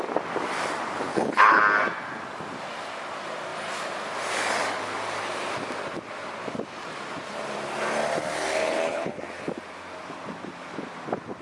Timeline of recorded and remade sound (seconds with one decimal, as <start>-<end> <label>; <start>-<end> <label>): 0.0-1.1 recorded; 1.1-1.6 remade; 1.6-8.6 recorded; 8.6-9.2 remade; 9.2-11.4 recorded

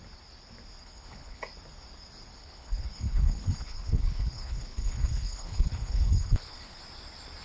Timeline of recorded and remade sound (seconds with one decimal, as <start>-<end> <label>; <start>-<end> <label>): 0.0-0.8 recorded; 0.8-1.4 remade; 1.4-2.4 recorded; 2.4-6.8 remade; 6.8-7.4 recorded